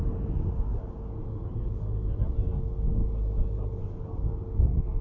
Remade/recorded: recorded